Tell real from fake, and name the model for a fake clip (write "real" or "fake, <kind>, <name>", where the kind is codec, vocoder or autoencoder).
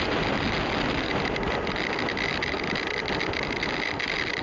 real